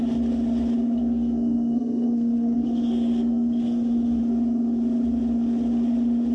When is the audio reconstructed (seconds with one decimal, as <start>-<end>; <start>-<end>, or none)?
1.0-4.2